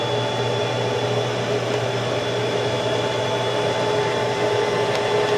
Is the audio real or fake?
real